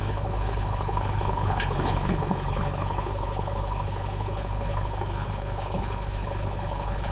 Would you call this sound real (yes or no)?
no